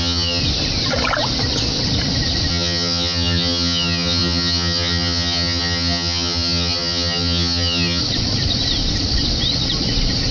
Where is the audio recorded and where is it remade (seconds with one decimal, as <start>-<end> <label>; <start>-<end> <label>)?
0.0-0.4 remade; 0.4-2.5 recorded; 2.5-8.0 remade; 8.0-10.3 recorded